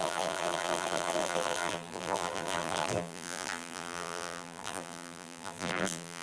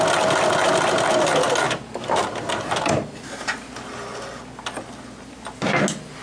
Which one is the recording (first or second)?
second